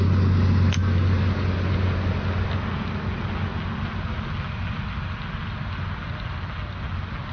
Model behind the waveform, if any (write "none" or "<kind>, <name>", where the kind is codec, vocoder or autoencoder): none